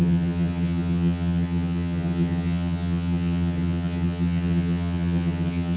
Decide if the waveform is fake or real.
fake